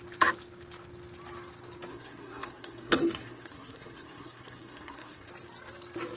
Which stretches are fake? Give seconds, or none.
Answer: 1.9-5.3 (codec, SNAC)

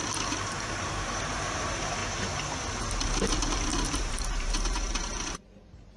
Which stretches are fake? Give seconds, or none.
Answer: 0.0-2.0 (vocoder, BigVGAN v2); 2.9-6.0

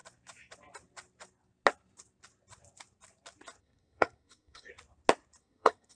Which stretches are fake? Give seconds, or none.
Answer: 3.6-4.7 (codec, SNAC); 5.4-6.0

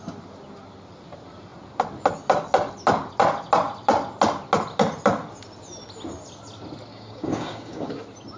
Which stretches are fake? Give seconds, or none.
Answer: 6.9-7.9 (codec, DAC)

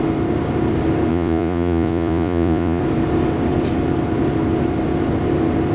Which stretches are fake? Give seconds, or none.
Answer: 1.1-2.8 (vocoder, Vocos)